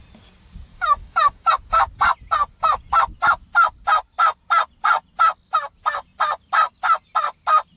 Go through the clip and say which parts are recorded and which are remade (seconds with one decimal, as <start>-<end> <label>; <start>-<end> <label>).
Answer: 0.0-0.7 recorded; 0.7-1.5 remade; 1.5-7.8 recorded